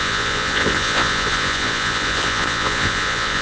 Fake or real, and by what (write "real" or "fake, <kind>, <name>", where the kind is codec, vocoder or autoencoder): fake, vocoder, Vocos